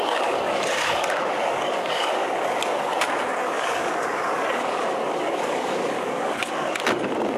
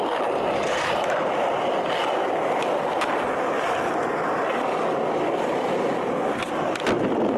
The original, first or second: second